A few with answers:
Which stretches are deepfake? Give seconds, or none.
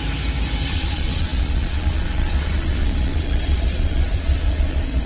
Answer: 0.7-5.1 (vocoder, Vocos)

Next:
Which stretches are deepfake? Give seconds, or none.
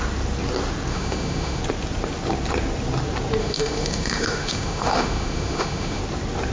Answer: 0.9-1.6 (autoencoder, DAC-VAE); 3.4-6.0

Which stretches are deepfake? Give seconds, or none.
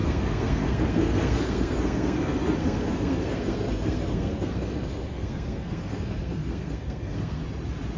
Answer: 0.0-7.4 (codec, SNAC)